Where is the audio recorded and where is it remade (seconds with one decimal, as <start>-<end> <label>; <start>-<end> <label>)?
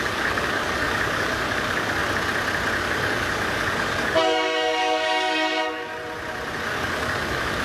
0.0-2.0 remade; 2.0-2.8 recorded; 2.8-5.9 remade; 5.9-6.7 recorded; 6.7-7.6 remade